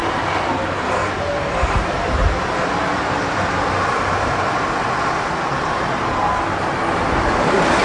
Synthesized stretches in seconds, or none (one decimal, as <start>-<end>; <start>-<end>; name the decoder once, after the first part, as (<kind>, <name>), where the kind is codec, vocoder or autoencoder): none